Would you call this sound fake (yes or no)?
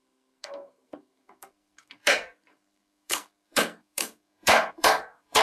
yes